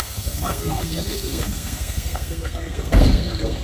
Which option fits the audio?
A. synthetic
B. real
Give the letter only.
A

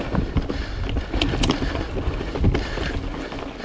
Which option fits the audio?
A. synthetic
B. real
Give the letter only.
B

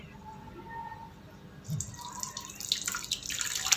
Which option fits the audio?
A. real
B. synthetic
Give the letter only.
A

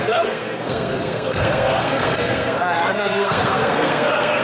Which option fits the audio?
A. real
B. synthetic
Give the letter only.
B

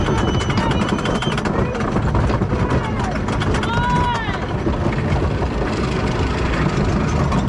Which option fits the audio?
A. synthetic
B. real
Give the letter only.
B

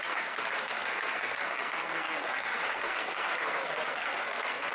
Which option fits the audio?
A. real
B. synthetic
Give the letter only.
B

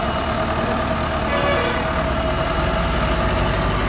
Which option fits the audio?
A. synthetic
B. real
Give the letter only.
B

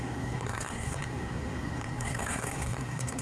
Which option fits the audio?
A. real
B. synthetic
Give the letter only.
B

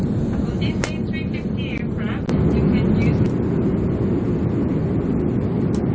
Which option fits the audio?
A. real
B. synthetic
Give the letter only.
A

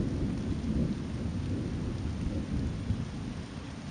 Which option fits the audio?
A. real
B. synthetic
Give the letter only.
A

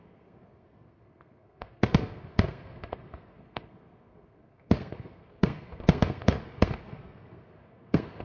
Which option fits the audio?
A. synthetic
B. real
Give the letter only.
A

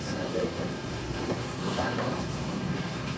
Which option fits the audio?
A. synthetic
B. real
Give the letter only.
A